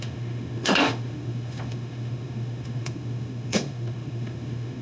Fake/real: fake